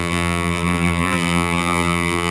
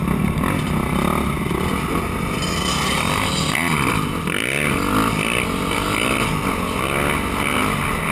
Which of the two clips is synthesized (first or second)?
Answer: first